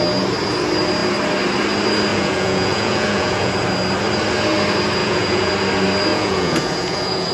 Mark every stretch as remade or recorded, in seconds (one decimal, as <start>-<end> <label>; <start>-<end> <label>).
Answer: 0.0-2.1 recorded; 2.1-3.5 remade; 3.5-5.0 recorded; 5.0-5.5 remade; 5.5-6.1 recorded; 6.1-7.3 remade